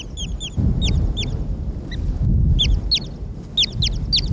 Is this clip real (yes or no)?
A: yes